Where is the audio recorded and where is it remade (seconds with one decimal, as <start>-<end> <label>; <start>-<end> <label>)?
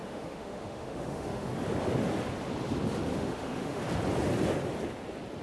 0.0-1.5 remade; 1.5-3.1 recorded; 3.1-3.8 remade; 3.8-5.4 recorded